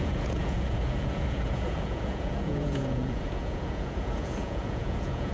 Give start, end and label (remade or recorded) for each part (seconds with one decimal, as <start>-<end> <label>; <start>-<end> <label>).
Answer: 0.0-5.3 remade

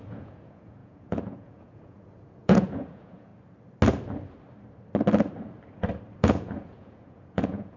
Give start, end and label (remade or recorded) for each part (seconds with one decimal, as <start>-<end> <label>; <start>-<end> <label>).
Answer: 0.0-3.3 remade; 3.3-6.2 recorded; 6.2-7.8 remade

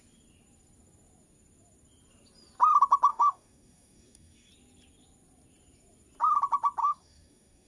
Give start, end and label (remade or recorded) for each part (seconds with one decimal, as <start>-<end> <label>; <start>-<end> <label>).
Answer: 0.0-3.1 recorded; 3.1-4.5 remade; 4.5-6.8 recorded; 6.8-7.7 remade

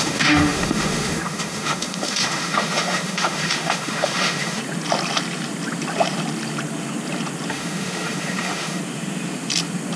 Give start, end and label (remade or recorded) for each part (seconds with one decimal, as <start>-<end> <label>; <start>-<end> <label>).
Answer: 0.0-4.6 remade; 4.6-7.5 recorded; 7.5-8.8 remade; 8.8-10.0 recorded

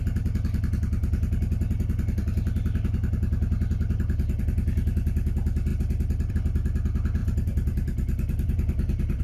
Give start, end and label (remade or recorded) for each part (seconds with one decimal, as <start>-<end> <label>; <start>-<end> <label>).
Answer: 0.0-7.2 recorded; 7.2-9.2 remade

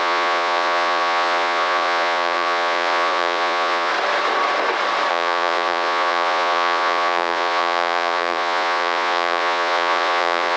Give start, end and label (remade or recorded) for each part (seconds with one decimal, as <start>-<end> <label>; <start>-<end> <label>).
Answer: 0.0-3.9 remade; 3.9-5.1 recorded; 5.1-10.6 remade

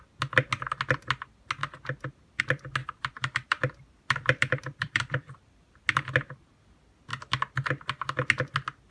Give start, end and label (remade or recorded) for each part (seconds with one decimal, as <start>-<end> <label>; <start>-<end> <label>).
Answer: 0.0-2.8 recorded; 2.8-5.8 remade; 5.8-8.9 recorded